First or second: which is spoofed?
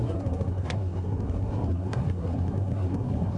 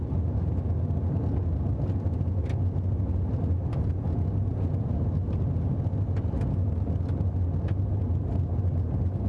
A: first